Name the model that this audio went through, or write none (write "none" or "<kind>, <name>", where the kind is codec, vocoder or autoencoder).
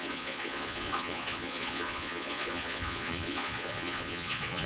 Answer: vocoder, Vocos